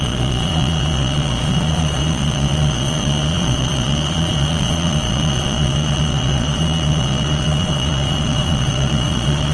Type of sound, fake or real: fake